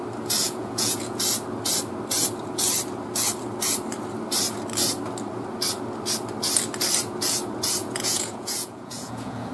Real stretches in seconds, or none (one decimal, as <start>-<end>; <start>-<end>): 0.0-0.4; 1.2-7.8